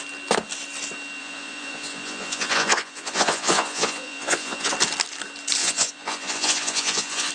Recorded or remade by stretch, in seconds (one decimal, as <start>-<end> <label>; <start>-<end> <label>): 0.0-1.2 recorded; 1.2-4.7 remade; 4.7-5.6 recorded; 5.6-7.3 remade